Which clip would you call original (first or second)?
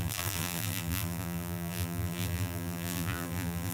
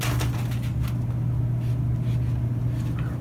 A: second